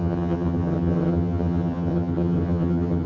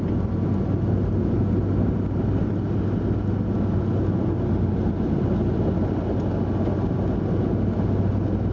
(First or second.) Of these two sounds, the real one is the second